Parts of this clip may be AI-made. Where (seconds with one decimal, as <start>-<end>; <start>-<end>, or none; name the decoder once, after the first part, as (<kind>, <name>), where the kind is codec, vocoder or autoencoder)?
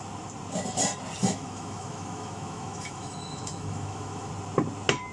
1.2-4.3 (autoencoder, DAC-VAE)